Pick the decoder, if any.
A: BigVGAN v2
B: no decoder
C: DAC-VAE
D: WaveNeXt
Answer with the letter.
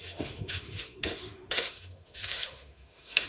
C